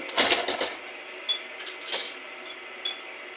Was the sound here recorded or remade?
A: recorded